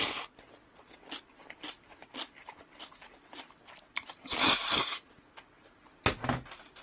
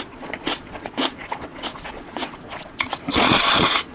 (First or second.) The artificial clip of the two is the second